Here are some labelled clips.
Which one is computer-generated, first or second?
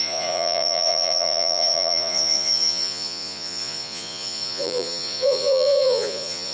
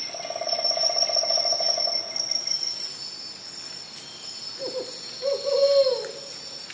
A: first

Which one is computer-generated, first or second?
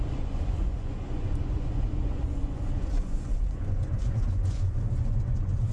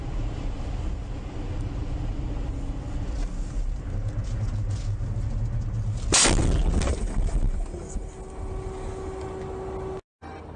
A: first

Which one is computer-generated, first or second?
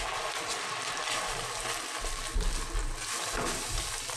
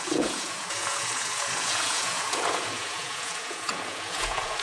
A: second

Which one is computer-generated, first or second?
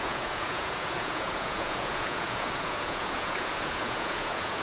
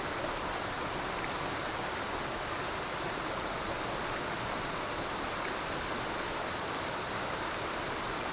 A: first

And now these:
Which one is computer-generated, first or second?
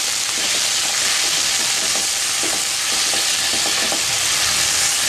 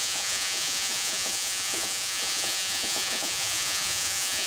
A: second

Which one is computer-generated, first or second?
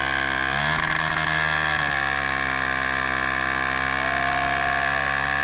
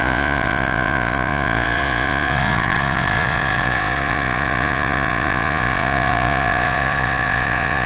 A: second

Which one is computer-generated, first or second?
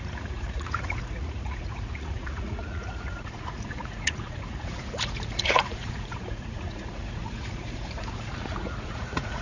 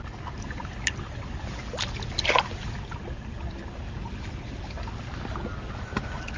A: first